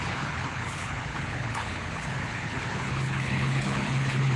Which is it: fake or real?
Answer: fake